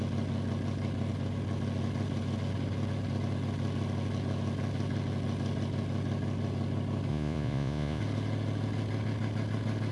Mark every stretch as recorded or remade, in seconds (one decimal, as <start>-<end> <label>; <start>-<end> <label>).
0.0-7.1 recorded; 7.1-8.0 remade; 8.0-9.9 recorded

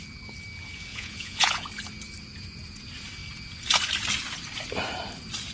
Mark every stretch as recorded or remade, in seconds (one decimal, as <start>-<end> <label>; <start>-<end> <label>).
0.0-0.9 recorded; 0.9-1.7 remade; 1.7-5.5 recorded